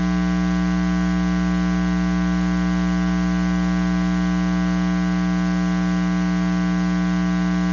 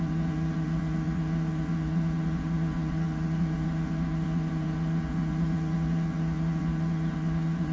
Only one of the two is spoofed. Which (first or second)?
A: second